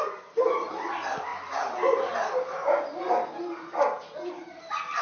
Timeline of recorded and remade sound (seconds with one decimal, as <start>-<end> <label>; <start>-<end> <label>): 0.0-5.0 recorded